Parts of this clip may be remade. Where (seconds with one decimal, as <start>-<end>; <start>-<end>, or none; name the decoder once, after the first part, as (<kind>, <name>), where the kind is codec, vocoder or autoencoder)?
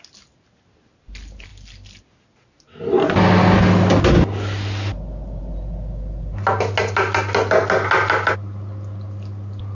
none